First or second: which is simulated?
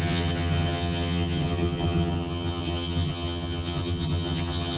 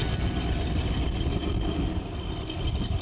first